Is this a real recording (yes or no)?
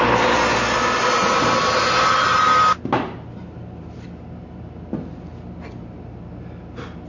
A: yes